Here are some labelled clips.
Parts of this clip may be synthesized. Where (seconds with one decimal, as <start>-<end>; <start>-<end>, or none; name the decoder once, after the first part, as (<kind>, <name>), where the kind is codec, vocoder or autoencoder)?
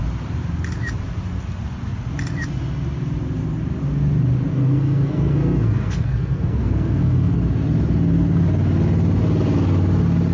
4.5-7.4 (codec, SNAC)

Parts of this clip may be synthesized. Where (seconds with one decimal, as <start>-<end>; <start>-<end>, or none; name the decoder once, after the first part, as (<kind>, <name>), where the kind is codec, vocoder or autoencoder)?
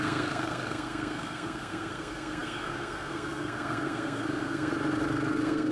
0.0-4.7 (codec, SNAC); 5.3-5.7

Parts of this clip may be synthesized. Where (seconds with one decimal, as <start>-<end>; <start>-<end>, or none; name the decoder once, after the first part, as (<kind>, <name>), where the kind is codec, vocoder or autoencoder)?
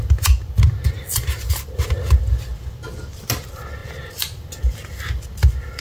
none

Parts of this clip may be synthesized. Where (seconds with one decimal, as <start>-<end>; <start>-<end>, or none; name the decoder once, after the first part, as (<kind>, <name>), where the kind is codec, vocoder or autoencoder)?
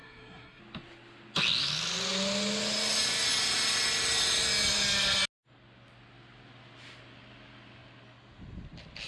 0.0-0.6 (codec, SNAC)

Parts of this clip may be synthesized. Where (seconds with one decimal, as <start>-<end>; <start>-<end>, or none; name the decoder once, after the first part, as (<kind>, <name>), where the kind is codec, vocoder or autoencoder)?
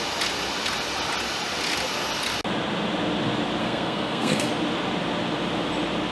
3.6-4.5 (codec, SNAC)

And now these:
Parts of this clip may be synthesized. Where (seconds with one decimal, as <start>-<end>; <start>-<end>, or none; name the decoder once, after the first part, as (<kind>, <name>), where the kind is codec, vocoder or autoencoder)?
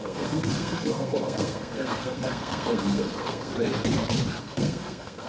0.0-3.5 (codec, SNAC); 4.4-5.3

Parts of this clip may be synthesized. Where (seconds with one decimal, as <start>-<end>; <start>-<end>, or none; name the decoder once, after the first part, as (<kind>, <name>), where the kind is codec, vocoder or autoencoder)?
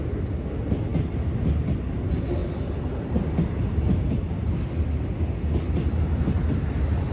none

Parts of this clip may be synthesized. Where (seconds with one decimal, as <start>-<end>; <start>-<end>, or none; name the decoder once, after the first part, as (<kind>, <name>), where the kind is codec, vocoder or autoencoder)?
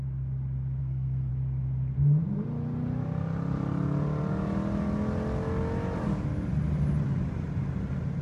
0.8-1.3 (codec, SNAC)